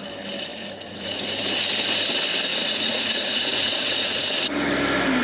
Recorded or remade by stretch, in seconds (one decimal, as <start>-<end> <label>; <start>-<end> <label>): 0.0-0.5 recorded; 0.5-1.2 remade; 1.2-2.5 recorded; 2.5-4.3 remade; 4.3-5.2 recorded